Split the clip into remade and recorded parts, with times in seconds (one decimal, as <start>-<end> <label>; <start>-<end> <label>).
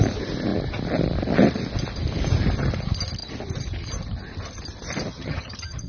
0.0-5.1 recorded; 5.1-5.9 remade